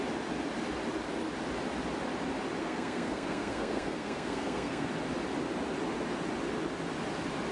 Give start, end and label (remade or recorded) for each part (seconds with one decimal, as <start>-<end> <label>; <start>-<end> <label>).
0.0-2.6 recorded; 2.6-4.9 remade; 4.9-7.5 recorded